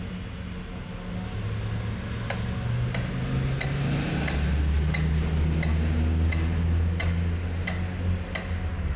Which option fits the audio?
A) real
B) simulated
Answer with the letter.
A